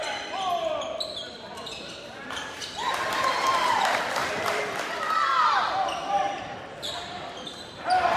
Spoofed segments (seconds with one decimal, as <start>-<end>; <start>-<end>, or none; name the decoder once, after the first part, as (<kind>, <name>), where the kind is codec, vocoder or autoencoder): 0.0-2.6 (vocoder, BigVGAN v2); 3.1-8.2